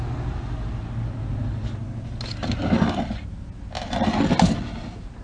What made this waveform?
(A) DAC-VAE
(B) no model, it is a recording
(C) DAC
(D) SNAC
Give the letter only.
B